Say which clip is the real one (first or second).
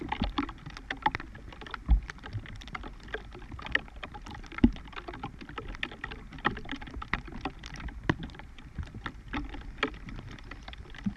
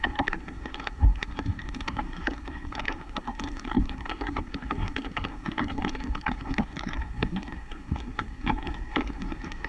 first